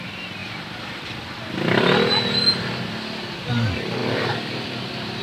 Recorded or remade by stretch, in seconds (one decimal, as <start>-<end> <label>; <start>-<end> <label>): 0.0-0.4 recorded; 0.4-3.5 remade; 3.5-4.0 recorded; 4.0-4.8 remade; 4.8-5.2 recorded